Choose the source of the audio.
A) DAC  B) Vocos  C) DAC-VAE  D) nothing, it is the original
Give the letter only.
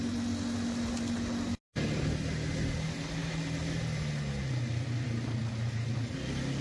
D